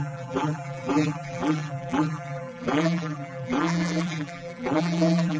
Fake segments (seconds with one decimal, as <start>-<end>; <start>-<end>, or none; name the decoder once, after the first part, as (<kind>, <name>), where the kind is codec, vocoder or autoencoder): 0.0-5.4 (vocoder, BigVGAN v2)